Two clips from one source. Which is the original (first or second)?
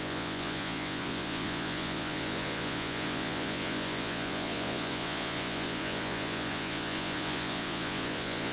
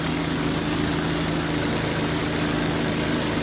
second